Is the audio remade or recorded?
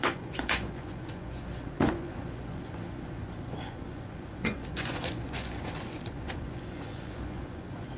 remade